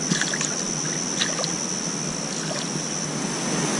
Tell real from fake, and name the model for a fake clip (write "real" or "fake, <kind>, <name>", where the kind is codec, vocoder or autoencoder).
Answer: real